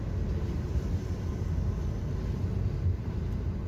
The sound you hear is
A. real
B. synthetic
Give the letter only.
A